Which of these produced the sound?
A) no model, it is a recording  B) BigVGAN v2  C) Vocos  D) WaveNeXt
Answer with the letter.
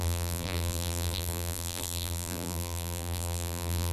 B